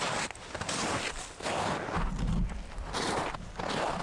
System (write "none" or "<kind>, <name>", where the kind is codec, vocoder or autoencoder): none